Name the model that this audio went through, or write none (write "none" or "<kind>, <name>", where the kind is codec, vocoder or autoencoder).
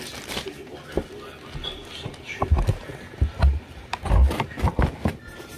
none